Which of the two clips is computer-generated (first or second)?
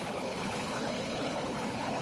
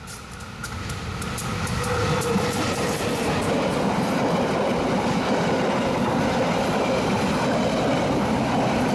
first